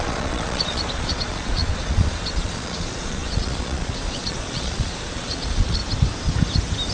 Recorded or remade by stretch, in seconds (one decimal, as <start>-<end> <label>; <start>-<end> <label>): 0.0-5.8 remade; 5.8-6.9 recorded